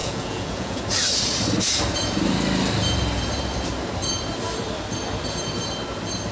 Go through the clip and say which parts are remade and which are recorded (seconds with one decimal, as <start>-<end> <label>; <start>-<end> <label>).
0.0-0.8 remade; 0.8-6.3 recorded